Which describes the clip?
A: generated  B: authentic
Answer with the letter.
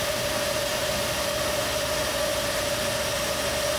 B